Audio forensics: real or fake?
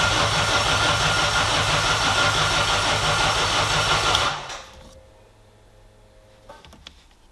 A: real